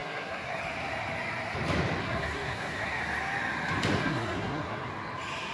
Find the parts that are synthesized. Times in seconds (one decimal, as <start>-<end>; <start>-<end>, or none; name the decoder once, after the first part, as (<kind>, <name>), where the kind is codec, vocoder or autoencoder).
0.0-0.6 (codec, SNAC); 2.0-3.0; 4.0-4.9